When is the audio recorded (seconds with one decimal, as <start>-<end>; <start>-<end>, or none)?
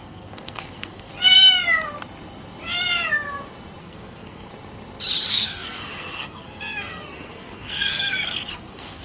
1.1-3.8; 4.5-5.3